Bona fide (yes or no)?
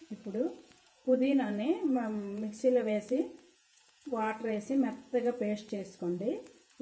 no